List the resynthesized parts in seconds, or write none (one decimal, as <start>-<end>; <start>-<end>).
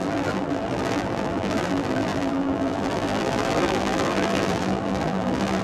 0.0-5.6